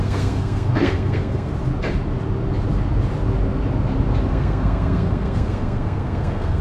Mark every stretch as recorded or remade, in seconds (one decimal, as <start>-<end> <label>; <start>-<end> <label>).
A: 0.0-1.5 remade; 1.5-4.3 recorded; 4.3-6.6 remade